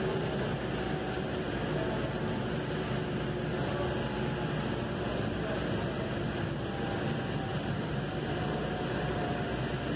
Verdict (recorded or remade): recorded